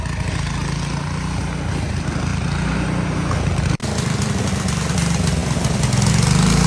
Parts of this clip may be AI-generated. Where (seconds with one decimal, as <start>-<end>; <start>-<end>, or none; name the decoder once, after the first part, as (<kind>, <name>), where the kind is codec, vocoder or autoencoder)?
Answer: 3.8-4.4 (vocoder, BigVGAN v2)